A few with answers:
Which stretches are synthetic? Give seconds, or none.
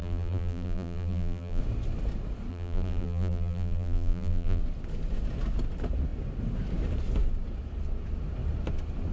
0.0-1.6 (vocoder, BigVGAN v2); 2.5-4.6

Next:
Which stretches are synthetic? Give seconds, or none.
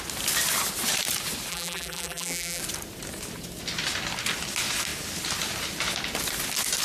1.5-2.6 (vocoder, BigVGAN v2)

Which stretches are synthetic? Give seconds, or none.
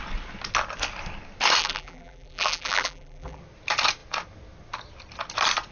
1.6-3.4 (vocoder, BigVGAN v2)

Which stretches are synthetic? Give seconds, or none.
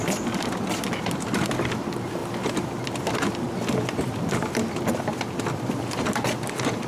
2.2-6.3 (vocoder, BigVGAN v2)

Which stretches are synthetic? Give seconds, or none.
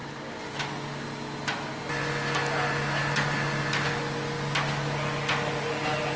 none